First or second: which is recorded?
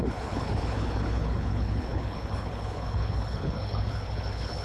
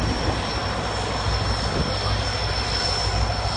second